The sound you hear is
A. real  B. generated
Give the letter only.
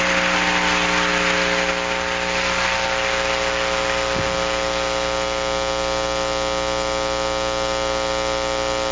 A